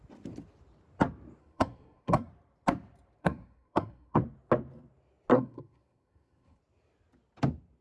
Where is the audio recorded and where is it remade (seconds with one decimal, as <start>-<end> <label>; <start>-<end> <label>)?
0.0-1.4 recorded; 1.4-2.3 remade; 2.3-3.2 recorded; 3.2-4.2 remade; 4.2-5.3 recorded; 5.3-6.6 remade; 6.6-7.8 recorded